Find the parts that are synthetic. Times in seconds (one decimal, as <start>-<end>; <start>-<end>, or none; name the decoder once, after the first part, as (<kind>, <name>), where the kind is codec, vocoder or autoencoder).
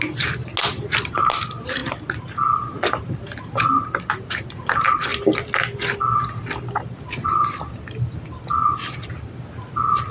1.8-4.0 (vocoder, BigVGAN v2); 5.1-7.7